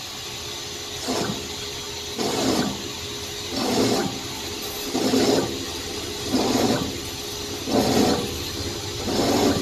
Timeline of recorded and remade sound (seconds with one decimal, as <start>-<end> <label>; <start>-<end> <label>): 0.0-9.6 recorded